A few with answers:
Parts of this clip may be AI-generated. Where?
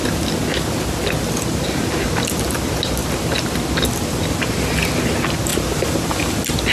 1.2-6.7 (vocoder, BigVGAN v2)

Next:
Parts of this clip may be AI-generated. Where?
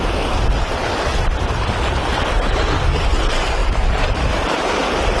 3.6-5.2 (vocoder, BigVGAN v2)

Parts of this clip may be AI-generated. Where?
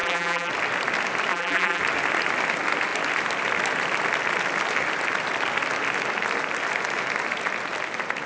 0.0-0.5 (vocoder, BigVGAN v2); 1.3-1.8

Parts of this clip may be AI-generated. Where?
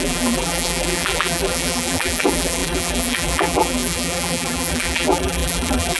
0.0-6.0 (vocoder, BigVGAN v2)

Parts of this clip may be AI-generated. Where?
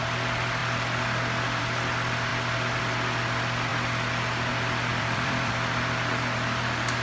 4.9-5.5 (vocoder, BigVGAN v2)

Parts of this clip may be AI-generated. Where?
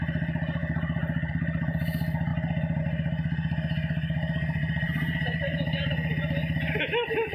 4.6-5.9 (vocoder, BigVGAN v2)